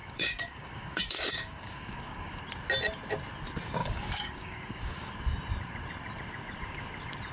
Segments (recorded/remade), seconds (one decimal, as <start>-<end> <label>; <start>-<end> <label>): 0.0-2.4 remade; 2.4-3.8 recorded; 3.8-5.1 remade; 5.1-7.3 recorded

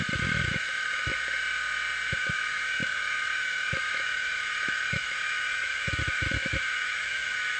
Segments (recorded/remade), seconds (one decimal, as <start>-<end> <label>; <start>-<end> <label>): 0.0-1.1 remade; 1.1-2.2 recorded; 2.2-7.6 remade

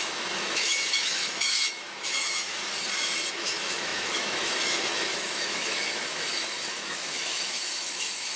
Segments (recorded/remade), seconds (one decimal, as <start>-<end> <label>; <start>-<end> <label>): 0.0-2.6 remade; 2.6-3.3 recorded; 3.3-8.4 remade

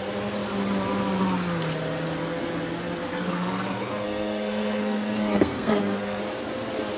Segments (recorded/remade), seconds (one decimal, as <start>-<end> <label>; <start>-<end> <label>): 0.0-3.1 recorded; 3.1-6.2 remade; 6.2-7.0 recorded

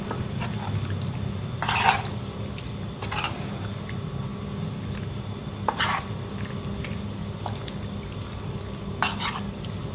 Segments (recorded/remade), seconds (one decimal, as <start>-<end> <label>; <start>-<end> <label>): 0.0-9.9 recorded

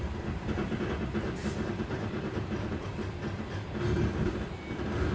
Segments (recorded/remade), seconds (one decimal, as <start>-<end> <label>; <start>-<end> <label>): 0.0-5.1 recorded